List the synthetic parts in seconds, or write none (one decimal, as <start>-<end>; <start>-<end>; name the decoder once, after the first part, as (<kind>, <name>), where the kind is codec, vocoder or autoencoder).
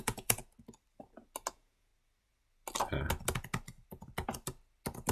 0.0-0.4 (vocoder, Vocos); 1.5-1.9